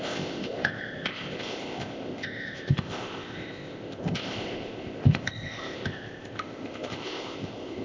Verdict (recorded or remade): remade